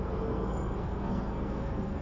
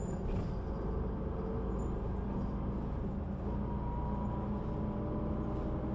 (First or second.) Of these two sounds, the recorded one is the second